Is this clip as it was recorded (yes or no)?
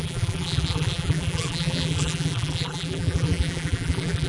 no